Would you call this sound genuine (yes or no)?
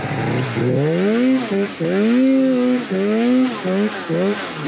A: yes